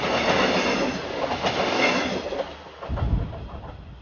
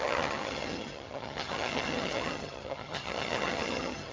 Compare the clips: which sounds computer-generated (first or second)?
second